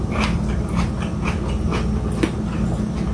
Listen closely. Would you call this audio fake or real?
real